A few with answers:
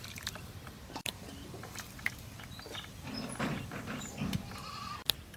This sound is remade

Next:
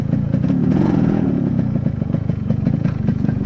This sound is remade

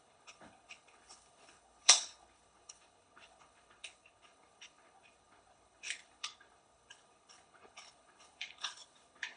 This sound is remade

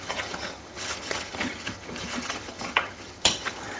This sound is remade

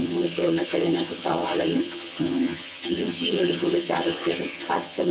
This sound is remade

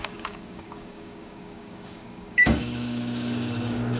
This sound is remade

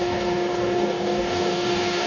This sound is remade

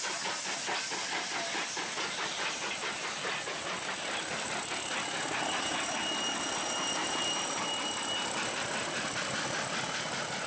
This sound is recorded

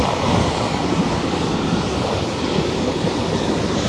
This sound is remade